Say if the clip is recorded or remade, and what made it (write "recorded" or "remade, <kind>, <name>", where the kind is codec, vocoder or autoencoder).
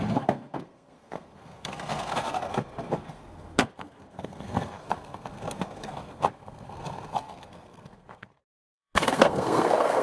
remade, codec, SNAC